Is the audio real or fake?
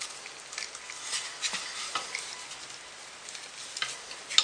real